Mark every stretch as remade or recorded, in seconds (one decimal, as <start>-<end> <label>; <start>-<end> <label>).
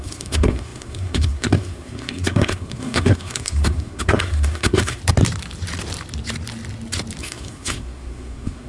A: 0.0-5.0 remade; 5.0-7.2 recorded; 7.2-8.7 remade